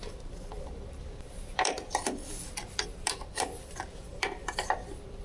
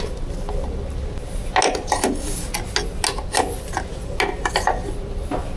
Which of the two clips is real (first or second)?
second